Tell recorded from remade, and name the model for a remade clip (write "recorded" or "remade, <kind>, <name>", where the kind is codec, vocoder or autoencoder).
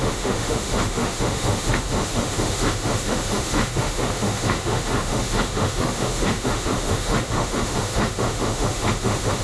remade, autoencoder, DAC-VAE